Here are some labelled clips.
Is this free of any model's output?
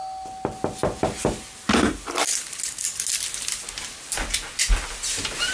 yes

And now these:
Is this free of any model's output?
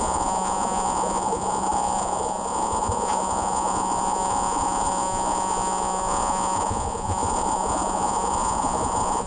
no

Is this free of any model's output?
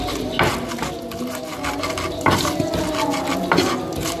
yes